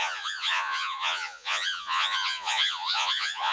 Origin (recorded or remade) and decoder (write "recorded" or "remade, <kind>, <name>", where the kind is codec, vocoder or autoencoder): remade, vocoder, Vocos